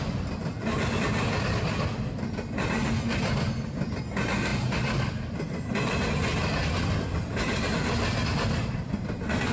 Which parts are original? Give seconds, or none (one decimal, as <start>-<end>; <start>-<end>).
0.0-9.5